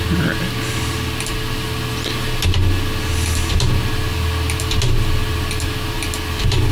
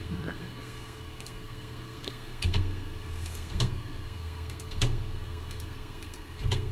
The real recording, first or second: first